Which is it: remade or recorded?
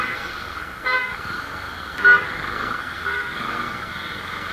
remade